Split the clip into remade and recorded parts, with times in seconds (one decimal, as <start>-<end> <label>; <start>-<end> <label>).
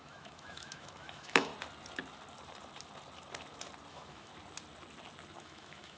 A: 0.0-1.5 remade; 1.5-3.9 recorded; 3.9-4.3 remade; 4.3-5.4 recorded; 5.4-6.0 remade